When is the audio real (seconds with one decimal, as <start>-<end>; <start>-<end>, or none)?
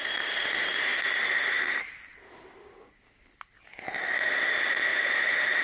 0.0-0.9; 1.8-4.9